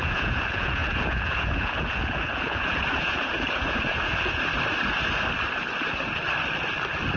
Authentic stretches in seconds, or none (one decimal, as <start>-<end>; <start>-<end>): 4.5-7.2